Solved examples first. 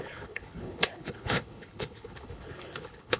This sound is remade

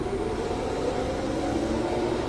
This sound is recorded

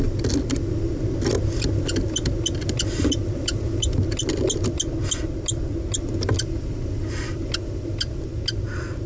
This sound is recorded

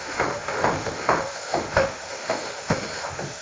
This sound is remade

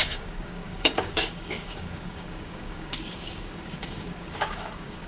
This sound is remade